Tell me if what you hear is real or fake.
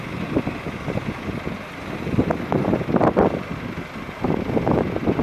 real